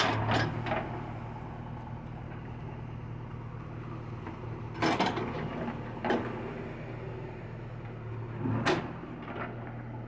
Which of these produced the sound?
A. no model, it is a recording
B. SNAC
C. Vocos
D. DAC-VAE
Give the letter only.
A